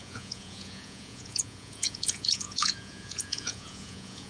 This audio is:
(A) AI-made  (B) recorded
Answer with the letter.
A